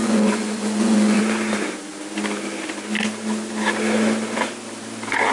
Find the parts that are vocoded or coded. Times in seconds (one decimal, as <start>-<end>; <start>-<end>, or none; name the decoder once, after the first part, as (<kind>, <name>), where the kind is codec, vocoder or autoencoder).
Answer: 0.0-1.2 (vocoder, Vocos)